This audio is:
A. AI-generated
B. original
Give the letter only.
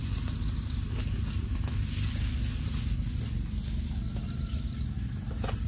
B